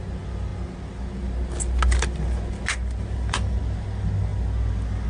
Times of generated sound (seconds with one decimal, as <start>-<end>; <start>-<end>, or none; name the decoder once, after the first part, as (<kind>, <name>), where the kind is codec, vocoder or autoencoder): none